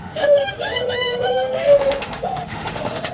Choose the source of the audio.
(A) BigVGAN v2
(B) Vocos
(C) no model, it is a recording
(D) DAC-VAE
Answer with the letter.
D